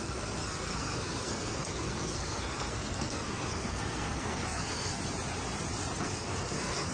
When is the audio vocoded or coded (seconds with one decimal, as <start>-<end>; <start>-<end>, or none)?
0.0-5.0; 6.0-6.9